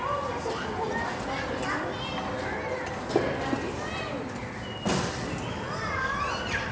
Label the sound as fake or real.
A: real